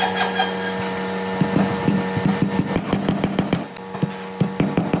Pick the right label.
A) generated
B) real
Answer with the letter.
B